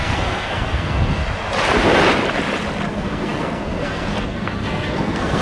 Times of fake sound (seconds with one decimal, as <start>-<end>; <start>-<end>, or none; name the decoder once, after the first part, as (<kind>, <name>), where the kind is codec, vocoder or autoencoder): 0.0-1.2 (codec, SNAC); 2.9-5.4